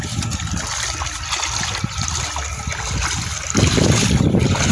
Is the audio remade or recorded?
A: recorded